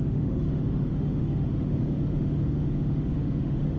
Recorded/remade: remade